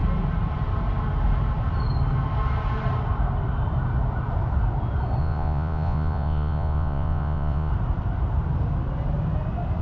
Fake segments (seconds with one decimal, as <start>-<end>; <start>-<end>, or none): 5.2-7.7

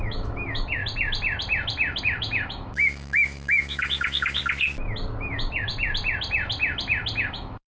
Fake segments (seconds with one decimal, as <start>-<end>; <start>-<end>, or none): 0.0-0.8; 2.0-4.4; 5.2-5.7; 7.2-7.8

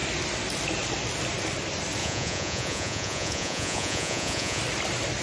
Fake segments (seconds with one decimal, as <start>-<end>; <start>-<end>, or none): 2.0-4.6